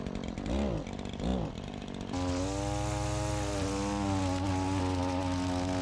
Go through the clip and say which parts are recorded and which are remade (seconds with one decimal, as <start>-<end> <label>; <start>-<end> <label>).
0.0-5.8 recorded